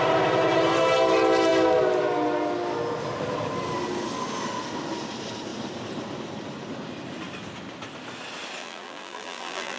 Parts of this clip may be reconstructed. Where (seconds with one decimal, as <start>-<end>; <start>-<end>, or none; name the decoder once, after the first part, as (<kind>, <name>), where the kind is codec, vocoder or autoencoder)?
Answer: 8.6-9.8 (vocoder, BigVGAN v2)